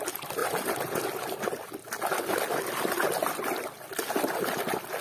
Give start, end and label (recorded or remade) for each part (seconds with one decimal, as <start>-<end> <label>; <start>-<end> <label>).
0.0-5.0 recorded